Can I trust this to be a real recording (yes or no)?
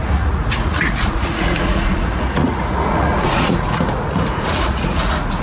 no